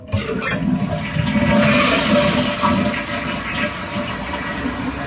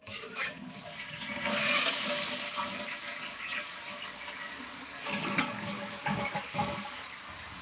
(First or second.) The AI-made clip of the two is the second